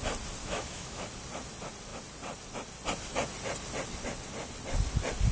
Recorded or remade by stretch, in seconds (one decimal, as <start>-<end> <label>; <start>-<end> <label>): 0.0-0.4 recorded; 0.4-1.0 remade; 1.0-5.3 recorded